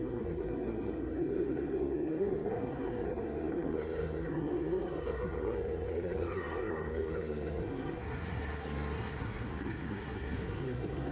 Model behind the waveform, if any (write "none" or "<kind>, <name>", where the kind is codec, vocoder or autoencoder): codec, SNAC